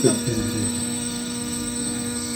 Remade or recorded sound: remade